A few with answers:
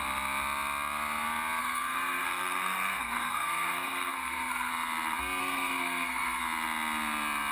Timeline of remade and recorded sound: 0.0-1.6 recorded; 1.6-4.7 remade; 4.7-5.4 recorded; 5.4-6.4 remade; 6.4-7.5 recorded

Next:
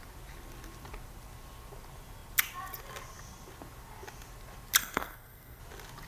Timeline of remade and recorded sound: 0.0-4.8 recorded; 4.8-5.6 remade; 5.6-6.1 recorded

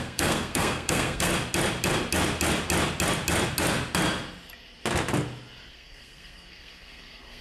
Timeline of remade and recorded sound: 0.0-1.3 remade; 1.3-5.7 recorded; 5.7-7.4 remade

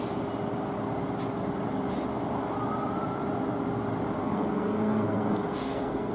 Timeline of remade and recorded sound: 0.0-4.2 recorded; 4.2-6.1 remade